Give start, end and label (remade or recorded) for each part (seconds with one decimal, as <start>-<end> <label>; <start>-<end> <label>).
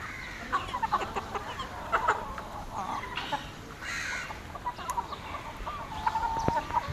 0.0-1.0 recorded; 1.0-3.8 remade; 3.8-6.9 recorded